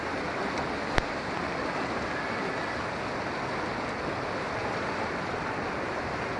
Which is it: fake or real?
real